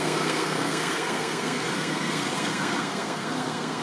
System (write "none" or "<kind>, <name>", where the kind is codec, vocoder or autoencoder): codec, SNAC